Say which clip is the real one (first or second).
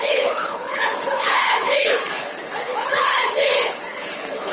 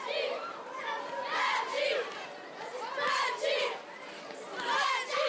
second